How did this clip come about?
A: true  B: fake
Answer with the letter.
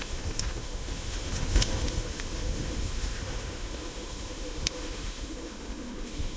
B